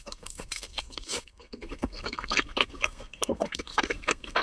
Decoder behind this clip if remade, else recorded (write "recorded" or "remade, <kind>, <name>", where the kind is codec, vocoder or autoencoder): remade, codec, SNAC